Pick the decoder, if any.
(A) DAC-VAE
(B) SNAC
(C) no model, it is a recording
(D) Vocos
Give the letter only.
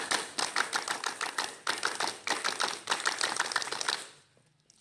C